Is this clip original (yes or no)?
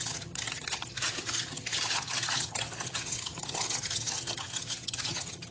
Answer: no